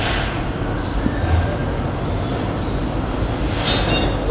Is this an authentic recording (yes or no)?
yes